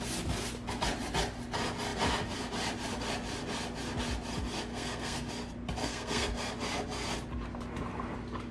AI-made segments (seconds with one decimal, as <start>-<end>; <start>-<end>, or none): 4.7-5.3; 5.8-6.5